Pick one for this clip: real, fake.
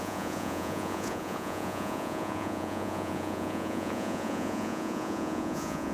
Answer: fake